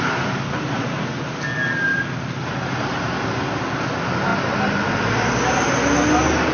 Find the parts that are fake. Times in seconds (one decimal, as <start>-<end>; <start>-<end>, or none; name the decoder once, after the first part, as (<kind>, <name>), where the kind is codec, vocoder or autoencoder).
none